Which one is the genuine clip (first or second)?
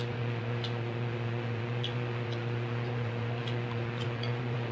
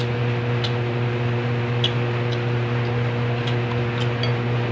second